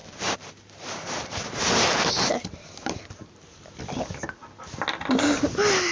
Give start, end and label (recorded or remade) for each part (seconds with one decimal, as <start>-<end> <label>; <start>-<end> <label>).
0.0-3.0 remade; 3.0-5.9 recorded